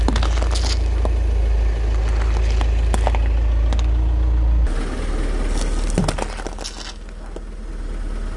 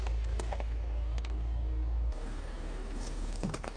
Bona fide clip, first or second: first